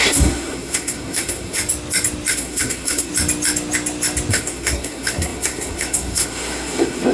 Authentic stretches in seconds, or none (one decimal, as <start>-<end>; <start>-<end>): 1.6-2.3; 3.1-4.3